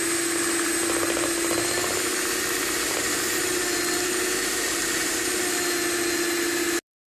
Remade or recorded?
recorded